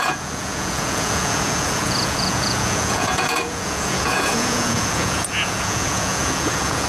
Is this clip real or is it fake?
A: fake